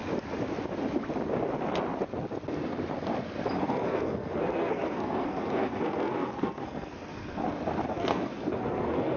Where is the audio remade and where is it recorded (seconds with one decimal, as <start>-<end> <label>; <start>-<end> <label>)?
0.0-3.6 recorded; 3.6-7.4 remade; 7.4-7.9 recorded; 7.9-9.2 remade